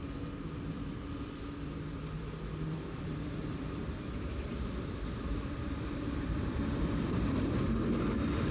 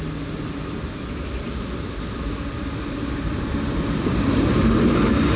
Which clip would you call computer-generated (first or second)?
first